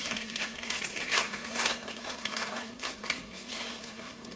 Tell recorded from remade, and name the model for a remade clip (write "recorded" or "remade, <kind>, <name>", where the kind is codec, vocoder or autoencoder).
remade, codec, SNAC